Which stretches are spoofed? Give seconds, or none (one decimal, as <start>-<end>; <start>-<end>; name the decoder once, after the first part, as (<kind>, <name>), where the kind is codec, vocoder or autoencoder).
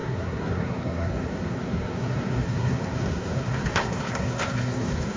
0.0-5.2 (codec, SNAC)